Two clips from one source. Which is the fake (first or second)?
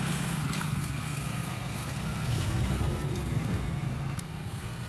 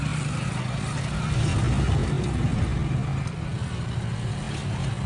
first